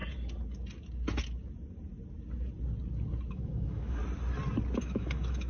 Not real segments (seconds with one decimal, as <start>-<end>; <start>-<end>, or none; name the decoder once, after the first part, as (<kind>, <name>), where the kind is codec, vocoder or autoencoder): 3.3-4.0 (autoencoder, DAC-VAE); 4.8-5.5